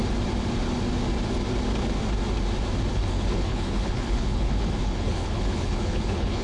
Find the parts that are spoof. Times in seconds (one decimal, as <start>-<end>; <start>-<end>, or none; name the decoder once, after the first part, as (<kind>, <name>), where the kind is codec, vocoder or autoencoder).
2.9-6.4 (codec, HILCodec)